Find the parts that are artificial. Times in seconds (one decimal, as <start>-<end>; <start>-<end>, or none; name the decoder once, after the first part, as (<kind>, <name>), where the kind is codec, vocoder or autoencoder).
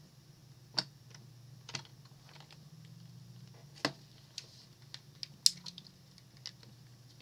none